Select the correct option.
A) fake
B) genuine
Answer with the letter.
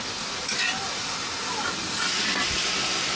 B